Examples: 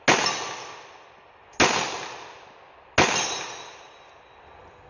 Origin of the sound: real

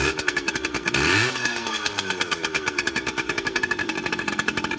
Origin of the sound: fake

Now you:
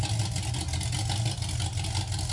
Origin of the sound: real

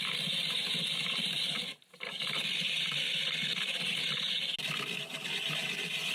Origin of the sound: real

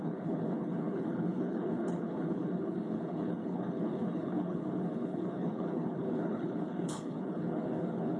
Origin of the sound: fake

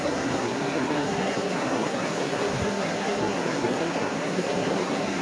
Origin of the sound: fake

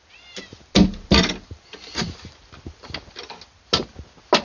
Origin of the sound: real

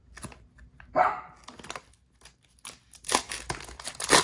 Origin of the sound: real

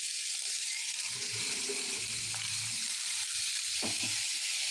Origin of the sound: fake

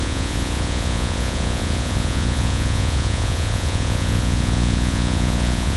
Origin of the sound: fake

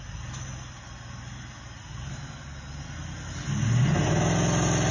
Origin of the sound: real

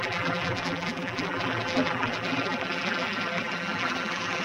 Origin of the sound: fake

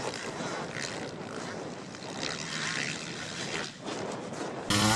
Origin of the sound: real